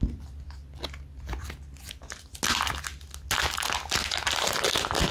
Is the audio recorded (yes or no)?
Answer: yes